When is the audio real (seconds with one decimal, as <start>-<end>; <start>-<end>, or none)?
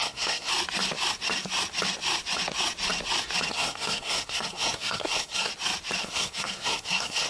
0.5-3.5; 5.5-6.0